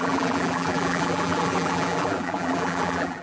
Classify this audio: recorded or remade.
remade